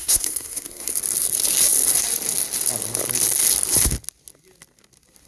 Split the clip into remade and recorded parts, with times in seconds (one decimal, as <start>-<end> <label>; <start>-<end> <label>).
0.0-0.9 remade; 0.9-5.3 recorded